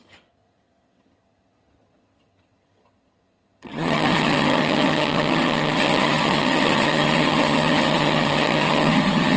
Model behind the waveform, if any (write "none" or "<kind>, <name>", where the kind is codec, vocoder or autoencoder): vocoder, HiFi-GAN